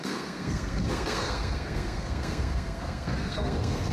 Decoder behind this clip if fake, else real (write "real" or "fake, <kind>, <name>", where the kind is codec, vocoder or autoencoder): fake, codec, SNAC